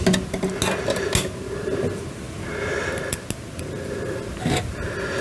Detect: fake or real real